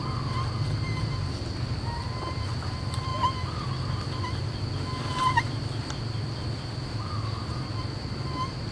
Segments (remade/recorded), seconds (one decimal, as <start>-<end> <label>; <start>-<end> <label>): 0.0-8.7 recorded